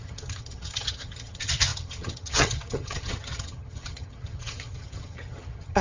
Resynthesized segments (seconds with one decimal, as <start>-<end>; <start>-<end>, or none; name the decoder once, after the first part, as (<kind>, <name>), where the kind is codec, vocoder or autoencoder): 0.0-5.8 (vocoder, HiFi-GAN)